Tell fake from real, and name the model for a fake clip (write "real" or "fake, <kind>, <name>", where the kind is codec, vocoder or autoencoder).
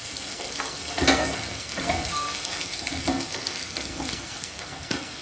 fake, codec, SNAC